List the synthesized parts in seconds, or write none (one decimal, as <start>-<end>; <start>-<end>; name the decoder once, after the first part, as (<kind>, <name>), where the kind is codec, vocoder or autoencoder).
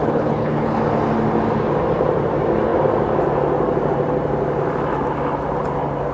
0.0-0.8 (codec, HILCodec)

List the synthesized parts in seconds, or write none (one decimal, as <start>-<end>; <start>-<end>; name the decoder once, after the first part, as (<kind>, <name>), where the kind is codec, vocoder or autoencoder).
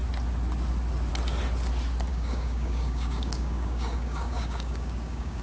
2.1-5.4 (codec, DAC)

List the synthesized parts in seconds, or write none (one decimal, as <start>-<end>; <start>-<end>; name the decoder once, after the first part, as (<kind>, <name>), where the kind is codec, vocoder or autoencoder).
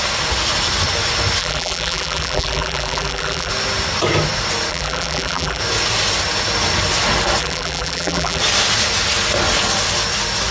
1.4-3.5 (vocoder, BigVGAN v2); 4.7-5.6; 7.4-8.4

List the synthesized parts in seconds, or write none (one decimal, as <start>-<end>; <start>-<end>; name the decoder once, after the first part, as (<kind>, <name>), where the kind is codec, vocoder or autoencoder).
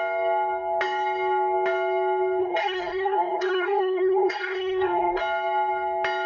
2.4-5.2 (codec, SNAC)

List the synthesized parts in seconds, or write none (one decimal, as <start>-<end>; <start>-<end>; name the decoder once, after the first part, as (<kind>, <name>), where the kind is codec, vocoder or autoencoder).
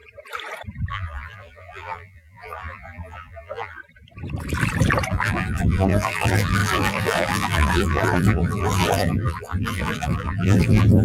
0.9-3.8 (vocoder, BigVGAN v2); 5.1-11.0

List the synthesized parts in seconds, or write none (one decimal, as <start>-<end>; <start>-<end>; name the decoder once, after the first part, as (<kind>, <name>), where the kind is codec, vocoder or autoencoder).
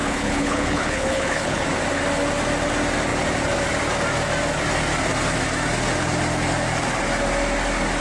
0.0-1.6 (codec, HILCodec)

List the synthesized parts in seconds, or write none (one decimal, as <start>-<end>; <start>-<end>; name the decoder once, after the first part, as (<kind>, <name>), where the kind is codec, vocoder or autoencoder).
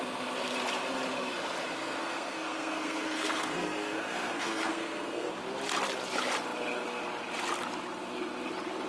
1.8-5.3 (codec, SNAC)